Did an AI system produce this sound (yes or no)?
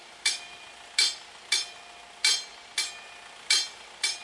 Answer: no